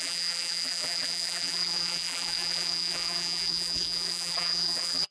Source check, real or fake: fake